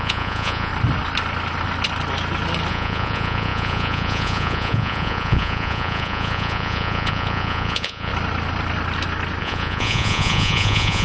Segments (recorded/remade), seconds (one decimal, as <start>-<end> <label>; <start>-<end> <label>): 0.0-0.7 remade; 0.7-2.7 recorded; 2.7-8.1 remade; 8.1-9.4 recorded; 9.4-11.0 remade